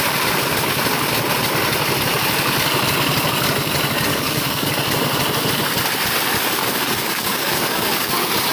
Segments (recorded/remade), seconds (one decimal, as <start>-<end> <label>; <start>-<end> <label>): 0.0-4.1 recorded; 4.1-4.7 remade; 4.7-6.6 recorded; 6.6-8.1 remade; 8.1-8.5 recorded